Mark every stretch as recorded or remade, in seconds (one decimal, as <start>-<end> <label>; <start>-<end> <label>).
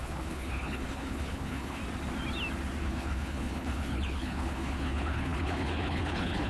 0.0-1.8 remade; 1.8-2.8 recorded; 2.8-6.5 remade